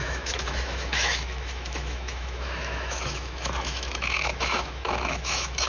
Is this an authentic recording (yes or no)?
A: no